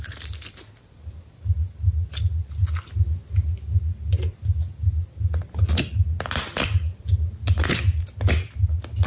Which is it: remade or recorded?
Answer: recorded